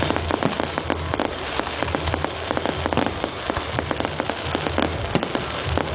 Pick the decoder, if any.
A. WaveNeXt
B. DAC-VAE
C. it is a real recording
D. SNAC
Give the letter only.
C